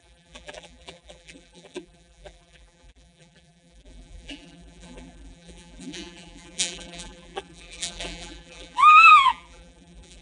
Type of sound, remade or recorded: remade